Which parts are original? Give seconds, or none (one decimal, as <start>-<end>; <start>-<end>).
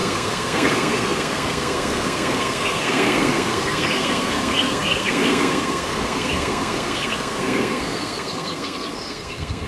none